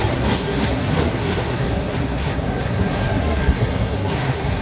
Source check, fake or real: fake